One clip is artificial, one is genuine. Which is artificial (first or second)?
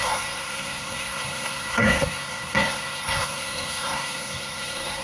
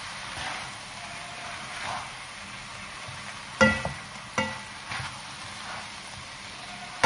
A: first